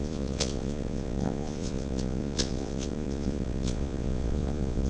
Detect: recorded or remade remade